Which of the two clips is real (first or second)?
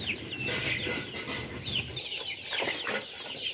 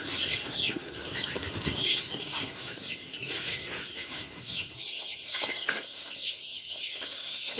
first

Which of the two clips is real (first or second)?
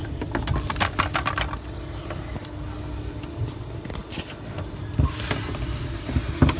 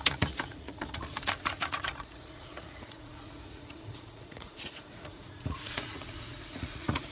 first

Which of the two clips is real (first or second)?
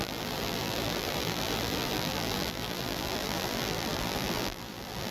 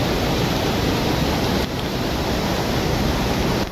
second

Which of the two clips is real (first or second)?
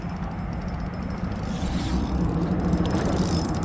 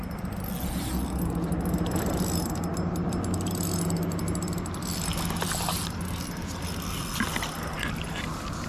second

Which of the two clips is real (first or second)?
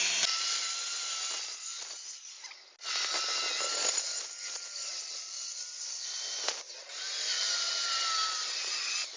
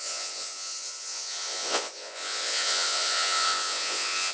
first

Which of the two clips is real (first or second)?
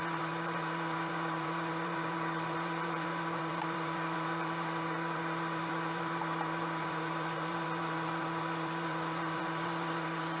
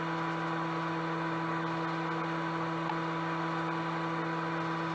second